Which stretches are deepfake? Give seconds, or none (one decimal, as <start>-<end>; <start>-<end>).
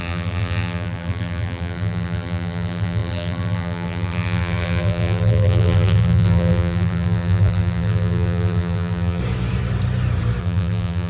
0.0-9.2; 10.4-11.1